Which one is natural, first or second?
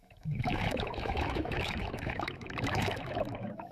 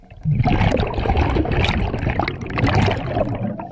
second